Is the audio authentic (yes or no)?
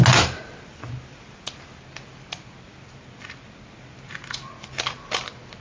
yes